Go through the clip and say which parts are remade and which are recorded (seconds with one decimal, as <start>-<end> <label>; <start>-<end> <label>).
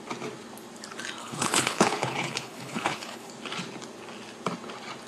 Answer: 0.0-1.2 recorded; 1.2-3.3 remade; 3.3-5.1 recorded